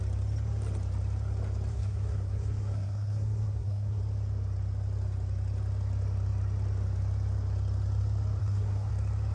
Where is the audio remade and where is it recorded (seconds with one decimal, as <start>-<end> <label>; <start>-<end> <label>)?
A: 0.0-1.7 recorded; 1.7-4.0 remade; 4.0-8.4 recorded; 8.4-8.9 remade; 8.9-9.3 recorded